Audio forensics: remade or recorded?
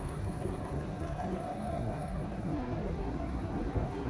remade